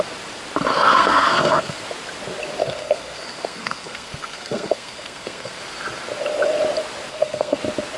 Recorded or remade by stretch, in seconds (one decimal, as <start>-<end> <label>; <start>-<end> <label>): 0.0-0.7 recorded; 0.7-1.8 remade; 1.8-2.6 recorded; 2.6-5.6 remade; 5.6-7.1 recorded; 7.1-7.6 remade; 7.6-8.0 recorded